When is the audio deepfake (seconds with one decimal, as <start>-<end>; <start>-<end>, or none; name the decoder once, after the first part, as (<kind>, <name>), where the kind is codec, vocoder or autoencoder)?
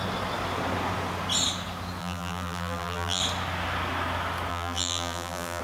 2.0-3.2 (vocoder, BigVGAN v2); 4.5-5.6